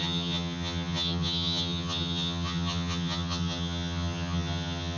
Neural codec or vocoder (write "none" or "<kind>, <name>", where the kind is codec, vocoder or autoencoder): vocoder, HiFi-GAN